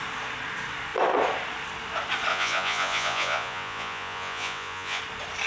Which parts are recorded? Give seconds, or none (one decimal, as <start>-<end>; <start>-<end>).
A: 0.0-2.3; 5.0-5.5